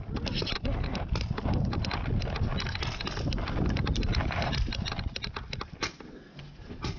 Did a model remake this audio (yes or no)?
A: no